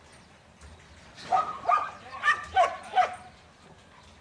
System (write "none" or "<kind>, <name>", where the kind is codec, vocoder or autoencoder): none